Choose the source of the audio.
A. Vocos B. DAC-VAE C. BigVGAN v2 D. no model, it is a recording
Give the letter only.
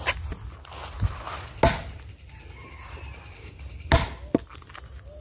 D